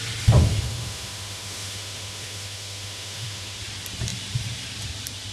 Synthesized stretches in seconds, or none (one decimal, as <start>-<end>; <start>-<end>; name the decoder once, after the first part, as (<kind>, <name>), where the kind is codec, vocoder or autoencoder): 0.4-3.6 (autoencoder, DAC-VAE)